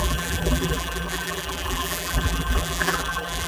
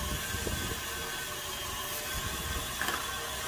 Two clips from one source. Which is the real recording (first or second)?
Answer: second